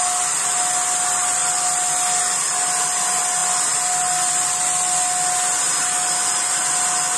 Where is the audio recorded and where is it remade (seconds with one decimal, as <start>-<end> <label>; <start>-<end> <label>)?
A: 0.0-7.2 recorded